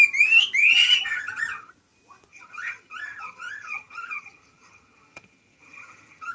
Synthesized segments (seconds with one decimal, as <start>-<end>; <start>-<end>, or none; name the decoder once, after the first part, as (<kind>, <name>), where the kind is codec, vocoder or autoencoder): 0.6-1.7 (vocoder, HiFi-GAN); 2.3-6.3